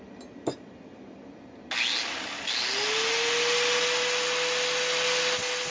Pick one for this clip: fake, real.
real